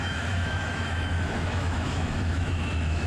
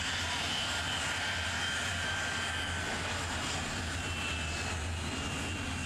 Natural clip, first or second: second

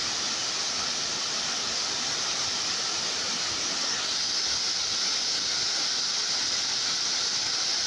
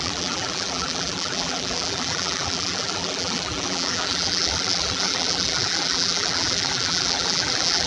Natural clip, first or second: first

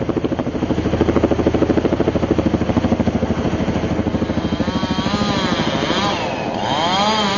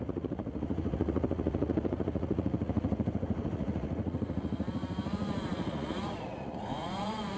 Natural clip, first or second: first